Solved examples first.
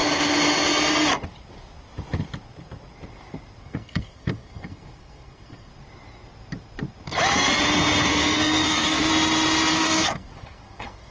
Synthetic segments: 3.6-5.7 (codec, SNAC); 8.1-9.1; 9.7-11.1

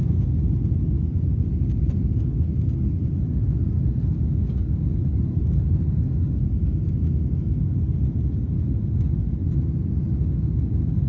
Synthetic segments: none

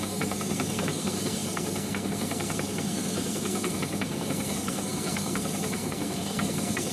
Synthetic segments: 0.0-6.9 (codec, SNAC)

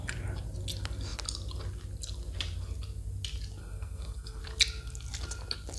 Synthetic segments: 3.6-4.4 (codec, SNAC)

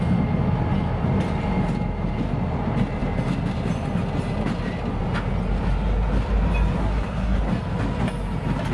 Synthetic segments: 6.8-7.4 (codec, SNAC)

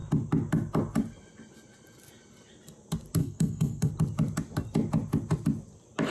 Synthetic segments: 3.2-3.9 (codec, SNAC)